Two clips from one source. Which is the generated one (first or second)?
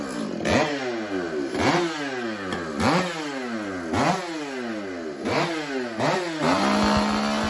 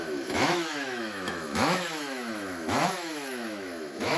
second